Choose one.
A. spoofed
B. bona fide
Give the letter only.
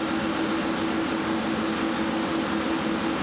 B